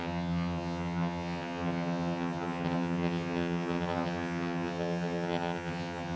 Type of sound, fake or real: fake